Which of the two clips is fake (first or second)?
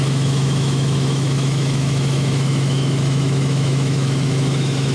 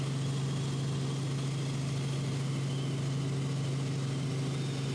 first